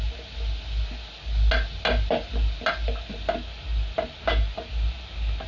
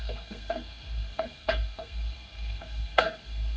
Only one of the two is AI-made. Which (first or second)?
second